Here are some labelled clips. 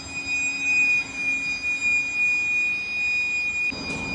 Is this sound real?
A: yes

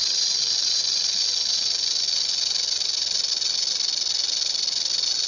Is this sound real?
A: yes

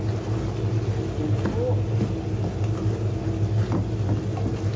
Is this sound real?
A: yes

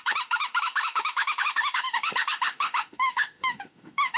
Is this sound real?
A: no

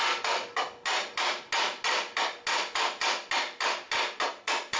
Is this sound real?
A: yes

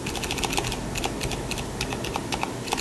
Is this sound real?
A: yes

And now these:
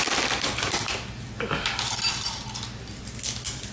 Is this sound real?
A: yes